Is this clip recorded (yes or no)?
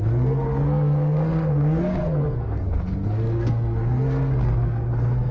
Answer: no